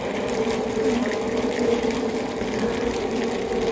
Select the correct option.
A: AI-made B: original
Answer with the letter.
B